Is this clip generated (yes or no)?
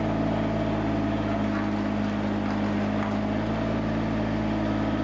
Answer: no